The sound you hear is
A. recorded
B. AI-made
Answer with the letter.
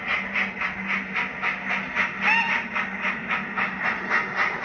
A